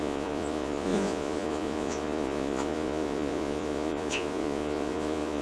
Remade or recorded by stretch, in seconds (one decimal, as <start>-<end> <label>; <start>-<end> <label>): 0.0-5.4 remade